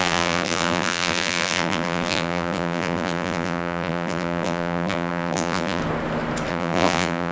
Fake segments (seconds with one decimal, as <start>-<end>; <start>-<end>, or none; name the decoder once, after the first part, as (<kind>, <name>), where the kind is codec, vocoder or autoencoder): 0.0-5.8 (vocoder, BigVGAN v2); 6.5-7.3